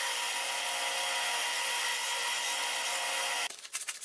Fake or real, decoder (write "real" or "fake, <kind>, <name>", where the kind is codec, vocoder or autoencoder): real